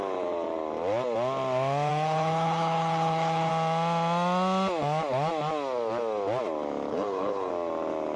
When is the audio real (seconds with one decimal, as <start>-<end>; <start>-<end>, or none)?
0.0-1.9; 3.5-6.9; 7.5-8.2